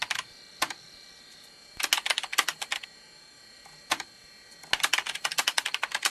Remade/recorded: recorded